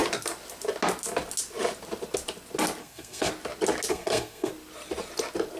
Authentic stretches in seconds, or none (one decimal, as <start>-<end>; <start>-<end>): 0.0-2.8; 3.3-3.9; 4.5-5.6